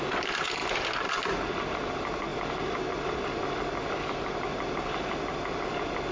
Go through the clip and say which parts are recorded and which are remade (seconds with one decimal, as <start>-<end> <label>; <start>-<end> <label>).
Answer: 0.0-6.1 recorded